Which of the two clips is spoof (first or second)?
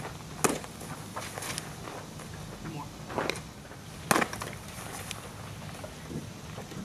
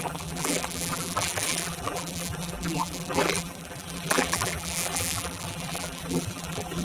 second